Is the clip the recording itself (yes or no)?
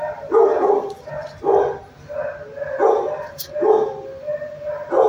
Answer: yes